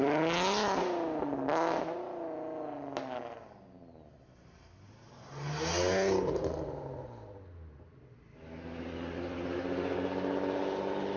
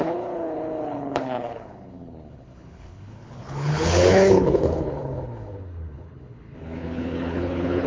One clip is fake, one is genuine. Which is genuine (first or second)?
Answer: first